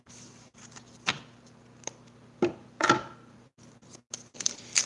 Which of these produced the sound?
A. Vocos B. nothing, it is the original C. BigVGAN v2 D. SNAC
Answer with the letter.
B